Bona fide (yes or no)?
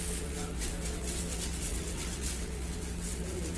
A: no